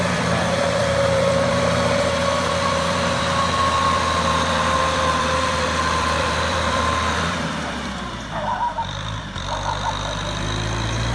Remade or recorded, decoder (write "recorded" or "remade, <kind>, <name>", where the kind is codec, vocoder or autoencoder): remade, vocoder, BigVGAN v2